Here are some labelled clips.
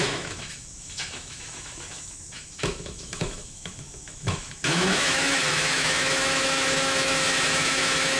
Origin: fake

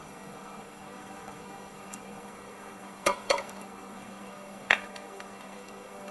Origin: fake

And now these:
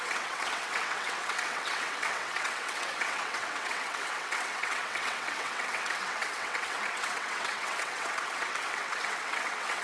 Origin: fake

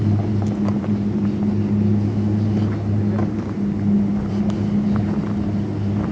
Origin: real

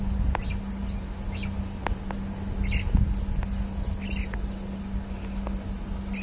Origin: real